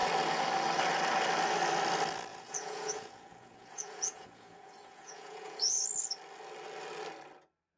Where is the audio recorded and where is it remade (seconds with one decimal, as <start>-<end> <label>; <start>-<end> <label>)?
0.0-2.3 recorded; 2.3-5.7 remade; 5.7-7.8 recorded